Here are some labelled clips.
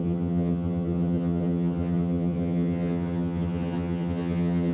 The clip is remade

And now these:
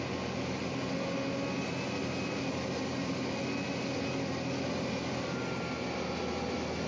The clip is recorded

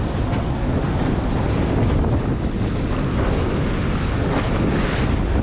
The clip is recorded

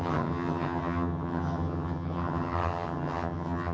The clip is remade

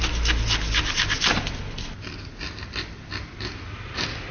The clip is recorded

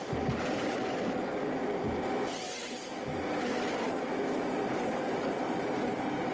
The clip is recorded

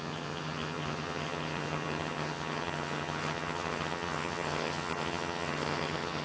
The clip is remade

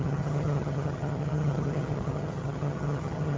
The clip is remade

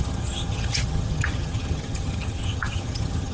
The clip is remade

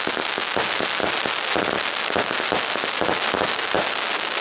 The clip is recorded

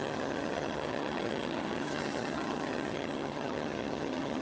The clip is remade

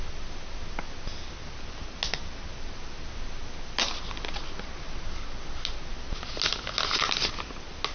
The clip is recorded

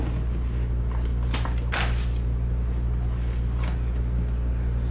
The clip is recorded